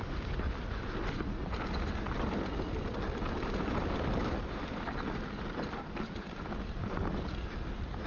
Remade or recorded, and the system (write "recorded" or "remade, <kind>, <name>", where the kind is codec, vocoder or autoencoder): recorded